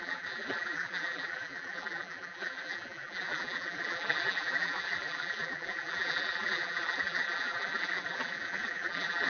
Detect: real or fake fake